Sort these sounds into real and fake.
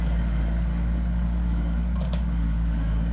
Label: fake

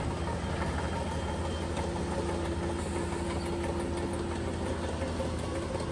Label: real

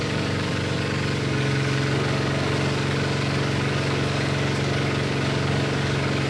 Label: fake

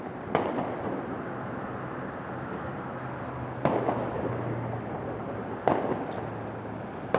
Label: real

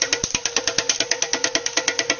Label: real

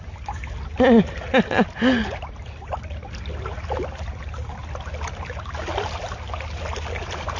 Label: real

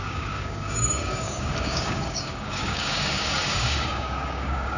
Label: fake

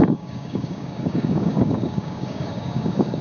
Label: fake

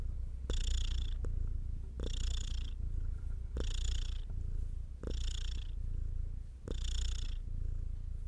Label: real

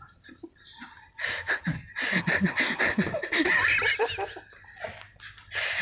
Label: real